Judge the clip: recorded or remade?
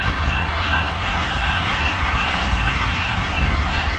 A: remade